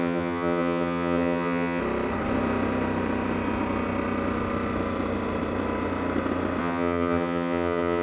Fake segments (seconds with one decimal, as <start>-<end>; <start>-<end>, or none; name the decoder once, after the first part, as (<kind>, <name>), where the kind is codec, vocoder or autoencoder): 0.0-1.8 (vocoder, HiFi-GAN); 6.6-8.0